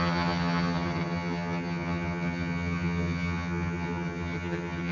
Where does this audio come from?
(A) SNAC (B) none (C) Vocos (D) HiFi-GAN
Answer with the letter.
D